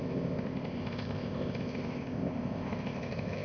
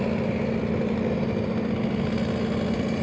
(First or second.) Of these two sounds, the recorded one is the second